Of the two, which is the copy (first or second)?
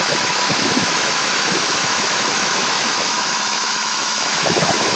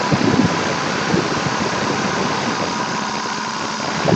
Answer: first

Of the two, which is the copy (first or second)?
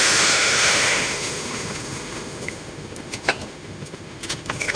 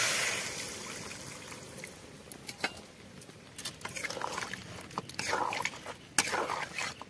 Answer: first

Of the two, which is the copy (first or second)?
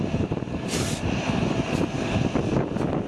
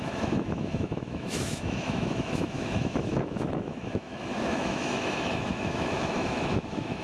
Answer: second